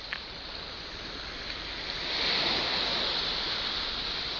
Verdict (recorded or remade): recorded